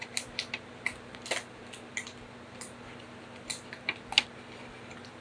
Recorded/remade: recorded